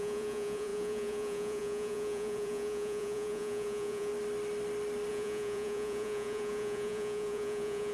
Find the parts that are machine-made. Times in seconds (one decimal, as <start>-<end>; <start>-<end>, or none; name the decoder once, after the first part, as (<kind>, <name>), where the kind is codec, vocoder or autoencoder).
0.0-4.1 (vocoder, Vocos); 5.1-7.9

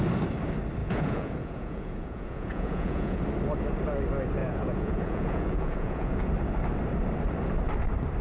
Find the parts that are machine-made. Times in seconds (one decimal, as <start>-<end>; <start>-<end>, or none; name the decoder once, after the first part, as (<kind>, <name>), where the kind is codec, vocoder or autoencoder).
0.8-3.2 (vocoder, Vocos); 4.4-6.3

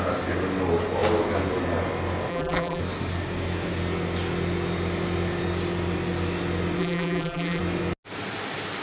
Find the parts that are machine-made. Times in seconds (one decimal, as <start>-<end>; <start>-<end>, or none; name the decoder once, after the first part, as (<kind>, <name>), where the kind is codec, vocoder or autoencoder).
2.3-2.8 (vocoder, BigVGAN v2); 6.8-7.6

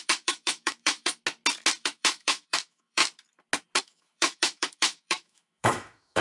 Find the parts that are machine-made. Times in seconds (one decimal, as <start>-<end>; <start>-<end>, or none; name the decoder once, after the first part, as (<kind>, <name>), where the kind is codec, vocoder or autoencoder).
0.0-1.2 (autoencoder, DAC-VAE); 1.8-3.0; 3.8-6.2